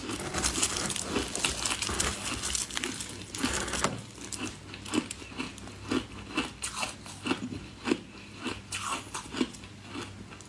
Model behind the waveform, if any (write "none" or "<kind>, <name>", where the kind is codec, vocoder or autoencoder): none